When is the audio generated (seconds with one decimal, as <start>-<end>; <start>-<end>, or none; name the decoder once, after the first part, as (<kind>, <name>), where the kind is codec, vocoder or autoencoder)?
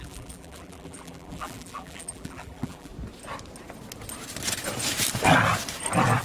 0.0-2.9 (vocoder, BigVGAN v2)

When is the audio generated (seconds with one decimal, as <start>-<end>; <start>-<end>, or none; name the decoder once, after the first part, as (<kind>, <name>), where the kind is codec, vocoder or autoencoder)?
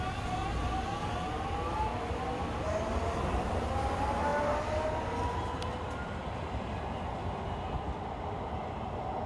none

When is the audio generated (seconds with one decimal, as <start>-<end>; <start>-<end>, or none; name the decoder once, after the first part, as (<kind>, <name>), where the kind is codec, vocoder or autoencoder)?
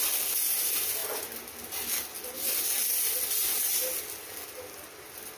none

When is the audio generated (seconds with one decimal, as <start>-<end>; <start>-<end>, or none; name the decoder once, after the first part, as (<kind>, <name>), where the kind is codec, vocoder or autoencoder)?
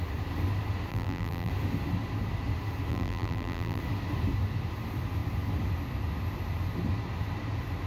0.9-1.5 (vocoder, BigVGAN v2); 2.9-3.8